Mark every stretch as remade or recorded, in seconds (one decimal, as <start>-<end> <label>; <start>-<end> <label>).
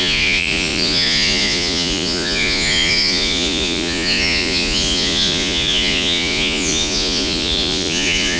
0.0-8.4 remade